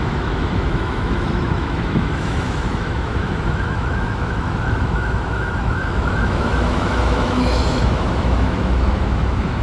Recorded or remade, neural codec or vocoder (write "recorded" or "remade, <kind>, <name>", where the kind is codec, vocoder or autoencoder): remade, autoencoder, DAC-VAE